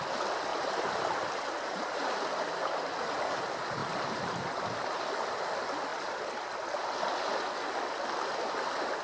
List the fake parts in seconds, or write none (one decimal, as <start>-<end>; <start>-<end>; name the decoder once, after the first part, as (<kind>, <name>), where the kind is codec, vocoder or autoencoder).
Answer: 0.5-2.1 (vocoder, BigVGAN v2); 3.8-4.4